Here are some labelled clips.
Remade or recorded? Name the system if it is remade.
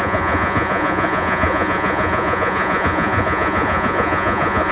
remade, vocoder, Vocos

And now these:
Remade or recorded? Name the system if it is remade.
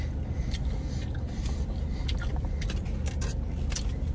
recorded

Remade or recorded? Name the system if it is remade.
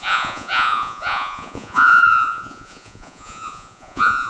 remade, vocoder, Vocos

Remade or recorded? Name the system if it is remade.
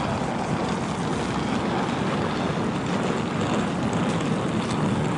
recorded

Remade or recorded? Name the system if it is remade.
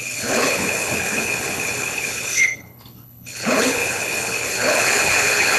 remade, codec, HILCodec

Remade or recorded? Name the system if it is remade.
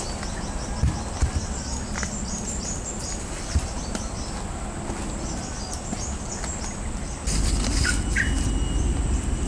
recorded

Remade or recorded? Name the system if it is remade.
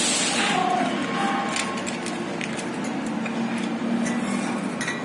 recorded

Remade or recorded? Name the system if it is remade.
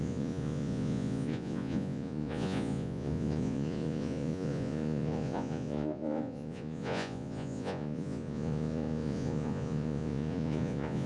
remade, vocoder, Vocos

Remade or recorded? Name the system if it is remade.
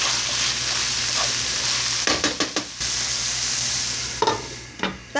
recorded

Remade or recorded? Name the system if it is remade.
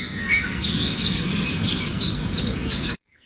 remade, codec, SNAC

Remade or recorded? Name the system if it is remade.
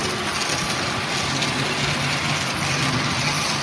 recorded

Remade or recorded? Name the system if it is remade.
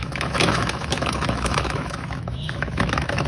remade, autoencoder, DAC-VAE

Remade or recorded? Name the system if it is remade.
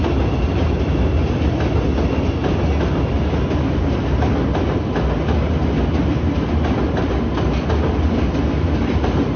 recorded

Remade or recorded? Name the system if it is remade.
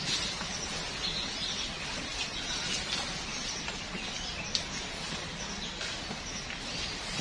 recorded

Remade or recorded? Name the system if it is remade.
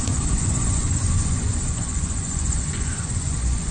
remade, vocoder, Vocos